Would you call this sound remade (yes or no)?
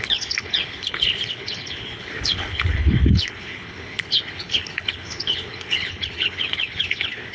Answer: yes